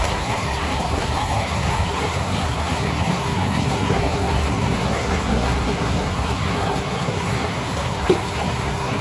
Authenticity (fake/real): fake